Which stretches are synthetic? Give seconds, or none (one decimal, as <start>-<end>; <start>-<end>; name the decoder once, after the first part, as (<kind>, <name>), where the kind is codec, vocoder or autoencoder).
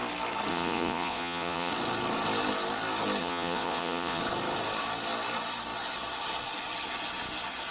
0.5-1.7 (vocoder, Vocos); 3.2-4.2